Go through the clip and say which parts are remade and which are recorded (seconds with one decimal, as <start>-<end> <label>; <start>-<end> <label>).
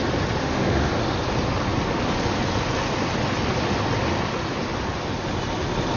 0.0-0.4 recorded; 0.4-0.9 remade; 0.9-6.0 recorded